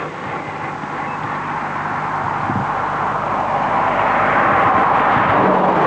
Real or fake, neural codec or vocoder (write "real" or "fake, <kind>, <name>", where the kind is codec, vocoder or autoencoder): real